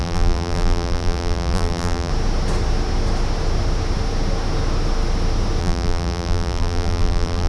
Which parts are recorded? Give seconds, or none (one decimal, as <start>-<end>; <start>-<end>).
2.1-5.6